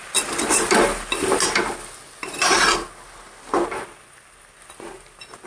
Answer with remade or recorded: recorded